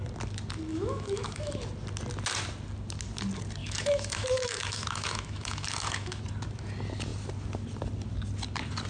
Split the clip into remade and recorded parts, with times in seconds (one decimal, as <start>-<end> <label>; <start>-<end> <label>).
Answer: 0.0-0.7 recorded; 0.7-1.5 remade; 1.5-3.6 recorded; 3.6-6.2 remade; 6.2-8.9 recorded